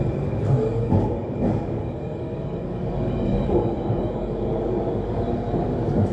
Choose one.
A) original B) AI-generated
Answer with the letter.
B